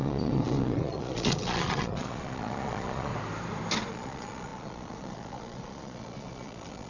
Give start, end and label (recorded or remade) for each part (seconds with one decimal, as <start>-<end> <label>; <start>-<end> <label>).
0.0-3.1 remade; 3.1-3.9 recorded; 3.9-6.9 remade